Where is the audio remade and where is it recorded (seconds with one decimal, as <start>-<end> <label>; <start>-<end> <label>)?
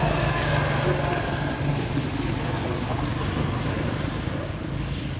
0.0-0.5 remade; 0.5-1.6 recorded; 1.6-3.1 remade; 3.1-4.5 recorded; 4.5-5.2 remade